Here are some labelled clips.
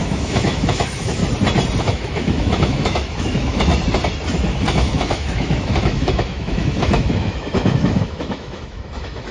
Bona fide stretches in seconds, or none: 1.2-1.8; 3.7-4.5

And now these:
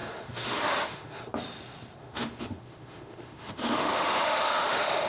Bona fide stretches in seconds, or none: 1.2-2.0

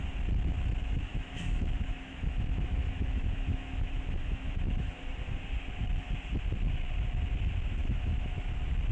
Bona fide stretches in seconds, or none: 0.0-1.1; 5.2-7.8; 8.5-8.9

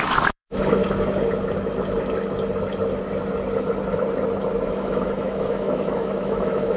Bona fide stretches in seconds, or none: 0.8-4.7

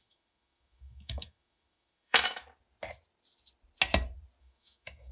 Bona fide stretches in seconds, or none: 2.4-4.4